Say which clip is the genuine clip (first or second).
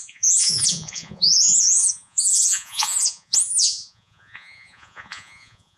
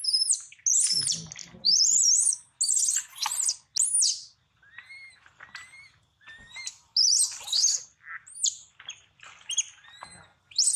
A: second